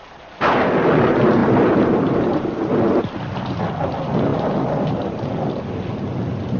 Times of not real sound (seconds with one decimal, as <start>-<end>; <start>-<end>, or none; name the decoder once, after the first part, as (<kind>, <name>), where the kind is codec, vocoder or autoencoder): 1.4-2.5 (vocoder, BigVGAN v2)